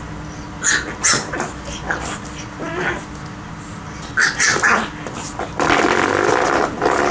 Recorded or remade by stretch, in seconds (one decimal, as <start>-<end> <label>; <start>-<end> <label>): 0.0-7.1 recorded